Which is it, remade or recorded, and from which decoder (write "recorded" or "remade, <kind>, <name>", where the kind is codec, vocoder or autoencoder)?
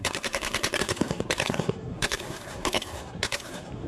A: remade, codec, SNAC